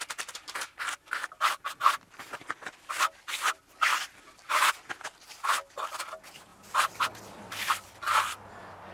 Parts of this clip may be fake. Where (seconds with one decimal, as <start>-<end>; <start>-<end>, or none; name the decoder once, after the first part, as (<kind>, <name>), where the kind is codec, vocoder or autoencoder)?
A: 3.9-4.7 (vocoder, BigVGAN v2); 6.5-7.7